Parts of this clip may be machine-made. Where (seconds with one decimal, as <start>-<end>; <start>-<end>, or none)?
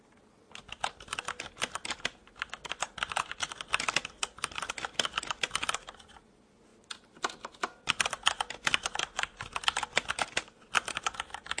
none